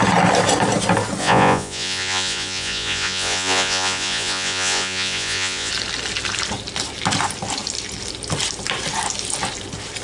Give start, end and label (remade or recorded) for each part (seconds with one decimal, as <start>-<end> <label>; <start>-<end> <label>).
0.0-1.2 recorded; 1.2-5.7 remade; 5.7-10.0 recorded